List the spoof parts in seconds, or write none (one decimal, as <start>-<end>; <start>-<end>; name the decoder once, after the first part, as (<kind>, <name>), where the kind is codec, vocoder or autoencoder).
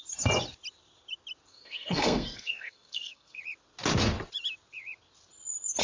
1.5-3.4 (codec, SNAC)